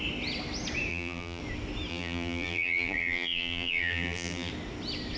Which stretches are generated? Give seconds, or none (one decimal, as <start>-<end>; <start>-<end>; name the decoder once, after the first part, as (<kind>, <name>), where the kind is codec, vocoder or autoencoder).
0.9-1.4 (vocoder, BigVGAN v2); 1.9-4.5